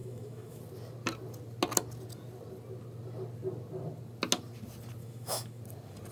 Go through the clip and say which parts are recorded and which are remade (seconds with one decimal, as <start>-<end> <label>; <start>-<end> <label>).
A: 0.0-0.6 remade; 0.6-5.0 recorded; 5.0-5.6 remade; 5.6-6.1 recorded